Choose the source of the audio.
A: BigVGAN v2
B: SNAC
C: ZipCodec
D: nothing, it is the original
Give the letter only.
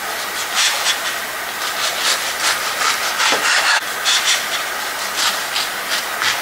D